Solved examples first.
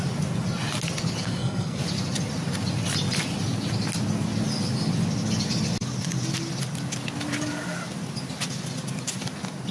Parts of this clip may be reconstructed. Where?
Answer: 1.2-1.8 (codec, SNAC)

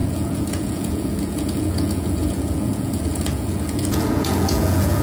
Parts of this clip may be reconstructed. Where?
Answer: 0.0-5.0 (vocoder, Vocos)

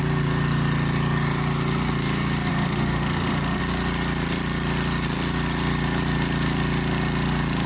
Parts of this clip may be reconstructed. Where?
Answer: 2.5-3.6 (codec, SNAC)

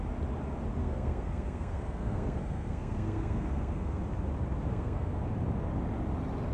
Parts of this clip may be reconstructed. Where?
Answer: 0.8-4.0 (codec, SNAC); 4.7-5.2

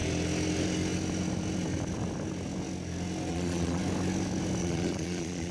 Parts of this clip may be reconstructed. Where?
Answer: 3.3-3.8 (vocoder, Vocos); 4.6-5.5

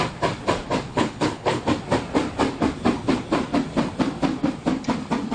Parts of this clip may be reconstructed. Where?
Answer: 0.9-1.6 (codec, HILCodec)

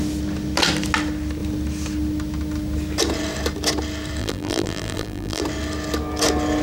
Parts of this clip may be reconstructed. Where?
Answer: 4.2-5.4 (vocoder, BigVGAN v2)